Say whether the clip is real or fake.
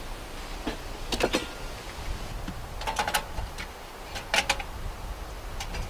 real